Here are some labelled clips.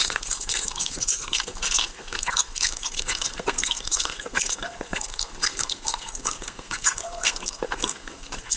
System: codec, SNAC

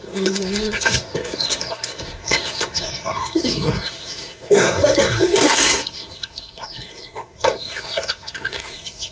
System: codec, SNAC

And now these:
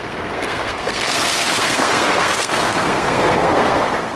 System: codec, SNAC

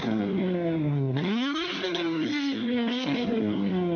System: codec, SNAC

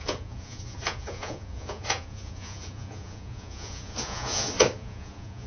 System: vocoder, Vocos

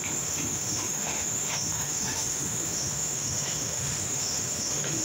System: autoencoder, DAC-VAE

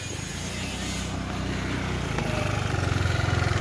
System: none